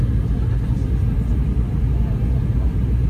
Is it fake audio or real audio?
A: real